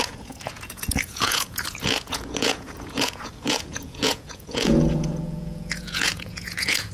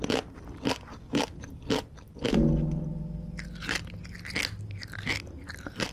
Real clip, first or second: second